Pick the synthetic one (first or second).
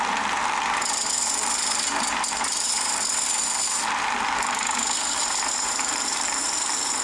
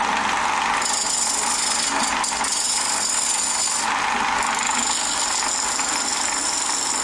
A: first